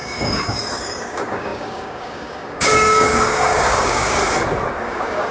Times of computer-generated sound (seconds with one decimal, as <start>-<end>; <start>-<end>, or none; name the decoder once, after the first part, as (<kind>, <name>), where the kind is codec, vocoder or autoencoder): 0.0-4.2 (codec, DAC); 4.8-5.3